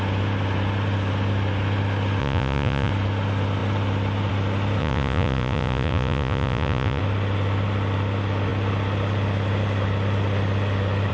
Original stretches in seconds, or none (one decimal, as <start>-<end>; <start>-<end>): 0.0-2.2; 2.9-4.8; 7.0-11.1